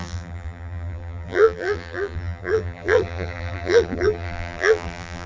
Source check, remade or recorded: remade